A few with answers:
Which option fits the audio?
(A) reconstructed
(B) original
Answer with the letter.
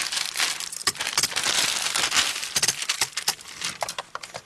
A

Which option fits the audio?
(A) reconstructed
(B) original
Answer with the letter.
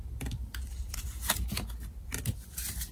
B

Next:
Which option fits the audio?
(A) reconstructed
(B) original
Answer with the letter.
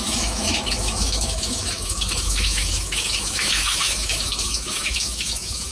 A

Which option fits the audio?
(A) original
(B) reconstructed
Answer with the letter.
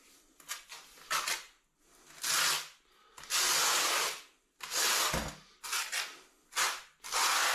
A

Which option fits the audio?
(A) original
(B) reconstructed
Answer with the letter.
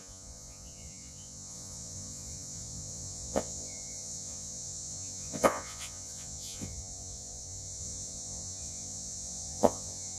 B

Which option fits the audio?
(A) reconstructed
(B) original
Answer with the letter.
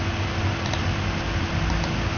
B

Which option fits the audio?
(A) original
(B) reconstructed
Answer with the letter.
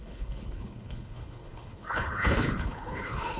B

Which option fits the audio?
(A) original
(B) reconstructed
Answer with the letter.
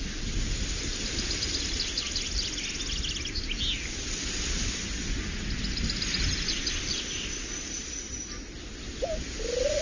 A